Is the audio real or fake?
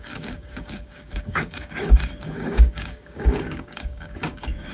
fake